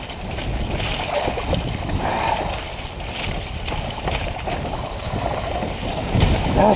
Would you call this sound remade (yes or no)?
no